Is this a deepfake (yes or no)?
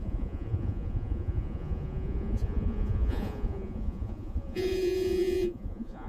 yes